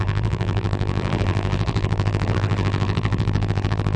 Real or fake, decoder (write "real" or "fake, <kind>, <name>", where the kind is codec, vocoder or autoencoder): fake, vocoder, BigVGAN v2